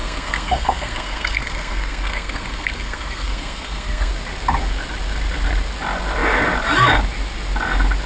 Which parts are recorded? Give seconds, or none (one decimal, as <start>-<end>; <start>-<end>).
4.1-8.1